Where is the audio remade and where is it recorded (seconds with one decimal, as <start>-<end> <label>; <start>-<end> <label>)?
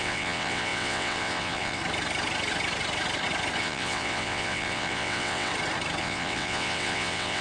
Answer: 0.0-1.8 remade; 1.8-3.6 recorded; 3.6-5.5 remade; 5.5-6.0 recorded; 6.0-7.4 remade